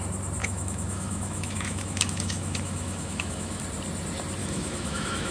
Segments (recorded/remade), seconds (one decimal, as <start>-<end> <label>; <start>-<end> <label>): 0.0-0.4 recorded; 0.4-3.6 remade; 3.6-4.4 recorded; 4.4-5.3 remade